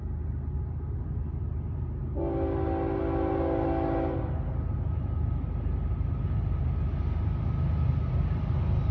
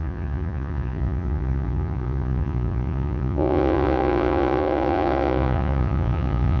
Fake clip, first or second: second